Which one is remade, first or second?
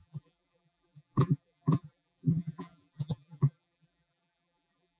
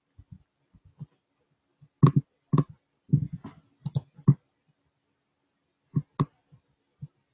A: first